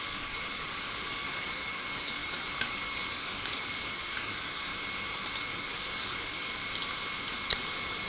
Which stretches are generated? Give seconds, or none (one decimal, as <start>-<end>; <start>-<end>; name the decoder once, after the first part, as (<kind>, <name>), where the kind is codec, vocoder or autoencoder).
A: 0.0-4.7 (codec, DAC); 5.5-6.6